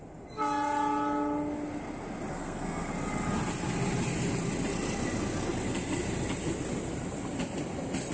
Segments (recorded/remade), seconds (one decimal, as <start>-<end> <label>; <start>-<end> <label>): 0.0-2.3 recorded; 2.3-2.9 remade; 2.9-8.1 recorded